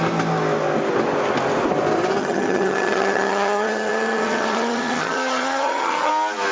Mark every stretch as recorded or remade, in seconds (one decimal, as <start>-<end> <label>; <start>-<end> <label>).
0.0-2.2 recorded; 2.2-6.1 remade; 6.1-6.5 recorded